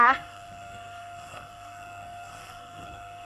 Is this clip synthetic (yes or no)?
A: yes